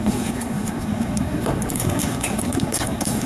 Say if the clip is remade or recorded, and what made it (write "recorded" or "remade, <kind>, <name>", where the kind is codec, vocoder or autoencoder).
remade, codec, SNAC